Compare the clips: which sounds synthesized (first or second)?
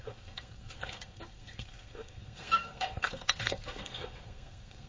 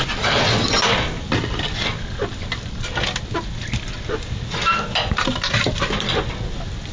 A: first